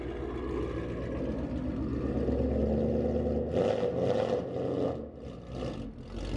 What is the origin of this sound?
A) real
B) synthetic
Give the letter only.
A